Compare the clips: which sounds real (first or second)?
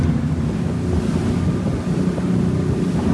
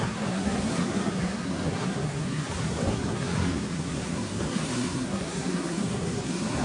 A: first